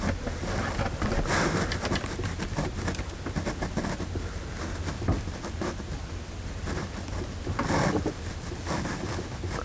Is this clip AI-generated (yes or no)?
no